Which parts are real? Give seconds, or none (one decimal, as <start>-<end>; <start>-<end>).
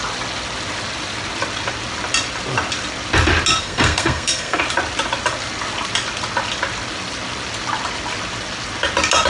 0.0-3.6; 4.6-9.3